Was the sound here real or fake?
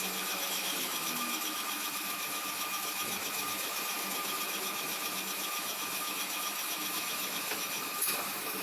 fake